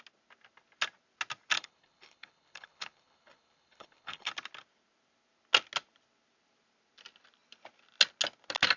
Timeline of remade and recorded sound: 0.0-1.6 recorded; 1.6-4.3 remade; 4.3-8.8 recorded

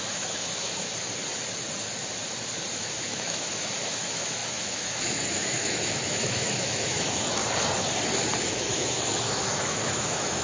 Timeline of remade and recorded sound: 0.0-0.9 remade; 0.9-2.7 recorded; 2.7-7.4 remade; 7.4-8.4 recorded; 8.4-10.4 remade